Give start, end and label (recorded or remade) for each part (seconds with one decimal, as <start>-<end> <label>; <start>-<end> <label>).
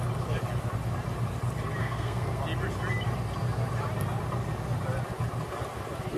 0.0-1.8 recorded; 1.8-2.4 remade; 2.4-6.2 recorded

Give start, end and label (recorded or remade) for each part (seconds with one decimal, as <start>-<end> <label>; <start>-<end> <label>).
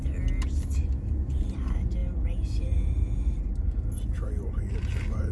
0.0-5.3 recorded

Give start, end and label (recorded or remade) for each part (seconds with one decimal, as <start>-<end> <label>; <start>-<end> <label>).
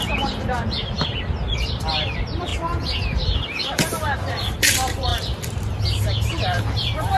0.0-5.1 remade; 5.1-6.0 recorded; 6.0-7.2 remade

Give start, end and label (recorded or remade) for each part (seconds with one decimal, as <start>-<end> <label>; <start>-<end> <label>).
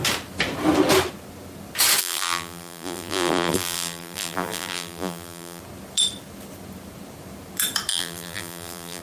0.0-2.0 recorded; 2.0-5.6 remade; 5.6-7.9 recorded; 7.9-9.0 remade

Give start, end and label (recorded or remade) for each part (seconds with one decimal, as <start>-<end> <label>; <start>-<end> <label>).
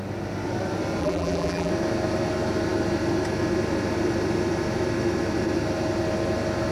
0.0-1.0 recorded; 1.0-1.7 remade; 1.7-6.7 recorded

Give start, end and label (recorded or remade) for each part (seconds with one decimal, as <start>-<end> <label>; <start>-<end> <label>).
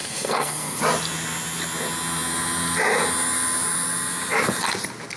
0.0-0.8 remade; 0.8-5.2 recorded